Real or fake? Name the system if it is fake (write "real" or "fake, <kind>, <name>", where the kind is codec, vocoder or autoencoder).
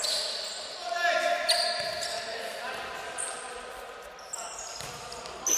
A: real